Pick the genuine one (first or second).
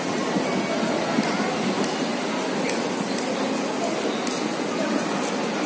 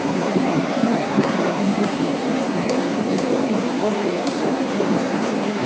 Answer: first